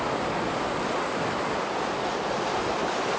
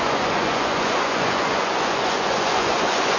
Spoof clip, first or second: second